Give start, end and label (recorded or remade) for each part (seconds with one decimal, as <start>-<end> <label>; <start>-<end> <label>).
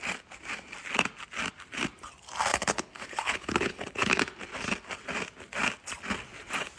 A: 0.0-2.5 recorded; 2.5-4.2 remade; 4.2-6.8 recorded